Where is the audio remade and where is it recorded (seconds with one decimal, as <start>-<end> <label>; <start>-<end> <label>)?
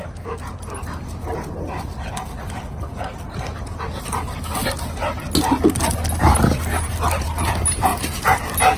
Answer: 0.0-7.9 recorded; 7.9-8.4 remade; 8.4-8.8 recorded